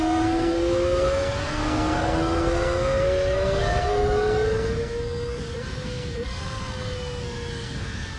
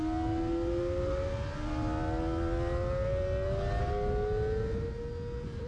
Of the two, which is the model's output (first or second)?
first